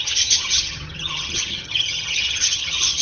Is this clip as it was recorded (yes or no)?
no